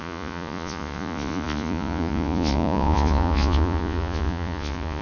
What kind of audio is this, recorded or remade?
remade